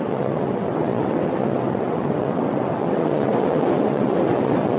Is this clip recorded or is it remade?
remade